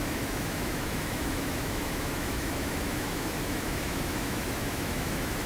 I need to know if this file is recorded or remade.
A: remade